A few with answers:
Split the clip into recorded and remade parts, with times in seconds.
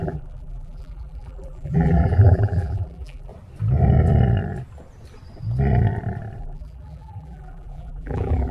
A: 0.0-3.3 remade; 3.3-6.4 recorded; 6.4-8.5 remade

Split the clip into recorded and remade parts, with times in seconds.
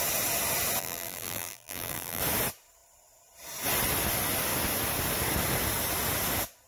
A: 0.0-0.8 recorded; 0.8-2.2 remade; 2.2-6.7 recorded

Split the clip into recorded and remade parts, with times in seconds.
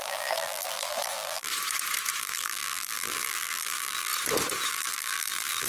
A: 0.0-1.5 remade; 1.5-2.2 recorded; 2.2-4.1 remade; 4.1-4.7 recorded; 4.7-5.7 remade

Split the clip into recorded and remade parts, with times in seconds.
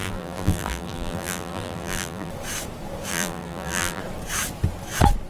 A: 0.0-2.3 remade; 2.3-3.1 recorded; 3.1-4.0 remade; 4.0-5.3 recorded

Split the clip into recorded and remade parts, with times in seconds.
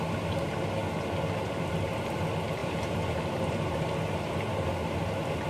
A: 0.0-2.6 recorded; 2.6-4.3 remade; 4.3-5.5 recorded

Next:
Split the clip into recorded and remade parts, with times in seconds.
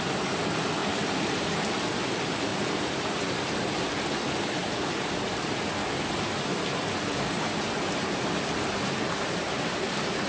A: 0.0-0.8 recorded; 0.8-1.6 remade; 1.6-2.5 recorded; 2.5-3.9 remade; 3.9-10.3 recorded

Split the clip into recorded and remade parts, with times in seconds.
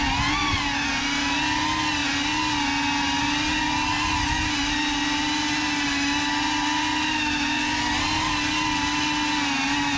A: 0.0-10.0 recorded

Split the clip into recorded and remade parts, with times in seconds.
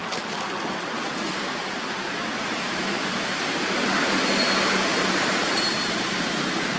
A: 0.0-0.9 recorded; 0.9-6.8 remade